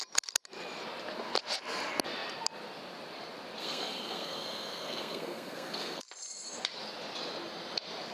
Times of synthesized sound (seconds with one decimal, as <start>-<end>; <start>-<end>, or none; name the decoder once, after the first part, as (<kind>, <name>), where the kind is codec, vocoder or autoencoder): 3.6-6.0 (codec, SNAC)